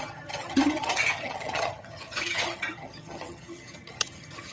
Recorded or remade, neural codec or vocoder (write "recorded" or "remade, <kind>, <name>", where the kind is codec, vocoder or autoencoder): remade, vocoder, HiFi-GAN